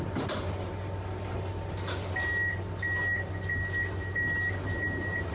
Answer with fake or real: real